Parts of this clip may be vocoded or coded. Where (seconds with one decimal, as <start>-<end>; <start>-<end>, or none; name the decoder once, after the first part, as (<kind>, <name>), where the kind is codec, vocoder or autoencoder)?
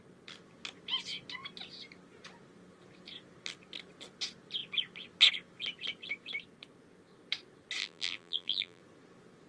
7.8-8.8 (vocoder, BigVGAN v2)